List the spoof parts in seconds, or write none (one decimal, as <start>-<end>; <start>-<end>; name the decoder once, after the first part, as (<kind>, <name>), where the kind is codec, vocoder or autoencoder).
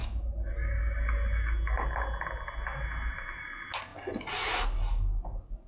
none